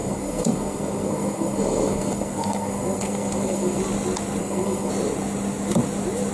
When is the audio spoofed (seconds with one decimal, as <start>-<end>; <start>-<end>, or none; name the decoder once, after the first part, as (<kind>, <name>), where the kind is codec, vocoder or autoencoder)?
0.0-3.8 (codec, SNAC); 4.4-4.9